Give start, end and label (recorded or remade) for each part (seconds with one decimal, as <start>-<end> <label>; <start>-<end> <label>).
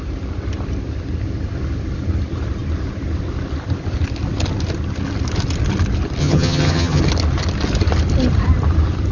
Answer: 0.0-6.2 recorded; 6.2-7.0 remade; 7.0-9.1 recorded